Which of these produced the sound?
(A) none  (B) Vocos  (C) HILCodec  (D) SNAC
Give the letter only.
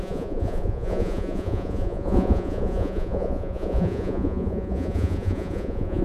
B